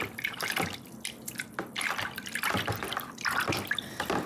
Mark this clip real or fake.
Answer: real